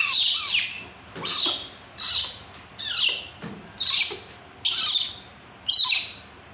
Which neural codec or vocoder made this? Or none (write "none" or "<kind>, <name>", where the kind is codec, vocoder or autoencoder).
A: none